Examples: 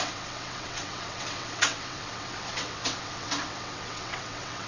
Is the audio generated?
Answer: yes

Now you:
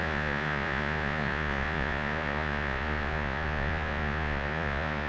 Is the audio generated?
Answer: yes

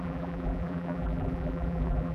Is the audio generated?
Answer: yes